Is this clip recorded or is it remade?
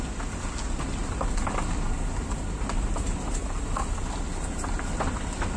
recorded